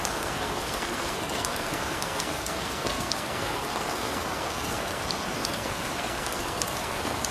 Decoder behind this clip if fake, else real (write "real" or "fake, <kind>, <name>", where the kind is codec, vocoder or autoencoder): fake, codec, SNAC